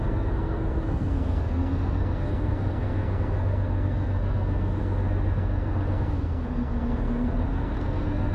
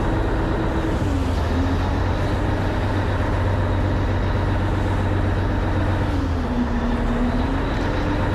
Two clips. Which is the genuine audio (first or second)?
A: second